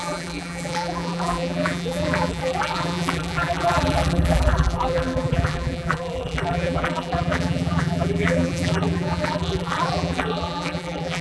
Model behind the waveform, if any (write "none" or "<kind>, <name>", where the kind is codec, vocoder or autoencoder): vocoder, BigVGAN v2